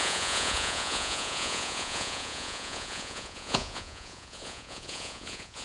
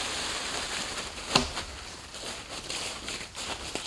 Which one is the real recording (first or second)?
second